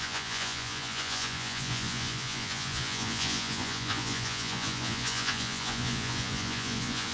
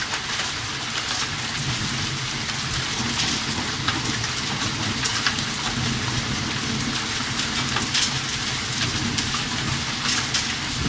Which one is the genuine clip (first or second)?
second